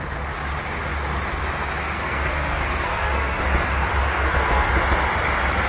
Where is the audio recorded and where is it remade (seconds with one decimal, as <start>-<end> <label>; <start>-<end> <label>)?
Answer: 0.0-1.8 recorded; 1.8-3.4 remade; 3.4-4.1 recorded; 4.1-4.7 remade; 4.7-5.7 recorded